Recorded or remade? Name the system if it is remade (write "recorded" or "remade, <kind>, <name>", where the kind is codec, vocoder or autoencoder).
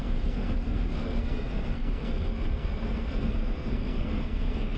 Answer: remade, codec, SNAC